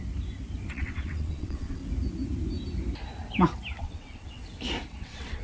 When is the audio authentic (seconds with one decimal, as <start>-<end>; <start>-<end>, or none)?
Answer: 0.0-0.7; 1.8-3.8; 4.4-4.9